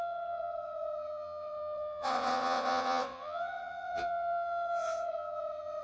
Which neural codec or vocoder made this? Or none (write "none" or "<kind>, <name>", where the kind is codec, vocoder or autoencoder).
vocoder, WaveNeXt